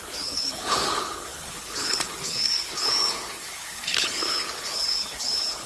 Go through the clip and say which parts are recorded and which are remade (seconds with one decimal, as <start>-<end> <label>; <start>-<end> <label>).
0.0-5.7 remade